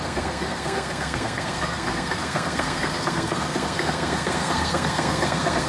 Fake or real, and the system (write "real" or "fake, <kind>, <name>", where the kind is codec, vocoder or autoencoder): fake, codec, SNAC